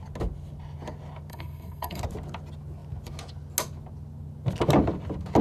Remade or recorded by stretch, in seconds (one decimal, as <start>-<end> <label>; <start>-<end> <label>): 0.0-1.3 recorded; 1.3-2.0 remade; 2.0-5.4 recorded